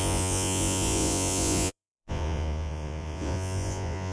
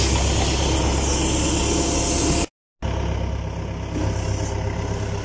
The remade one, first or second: first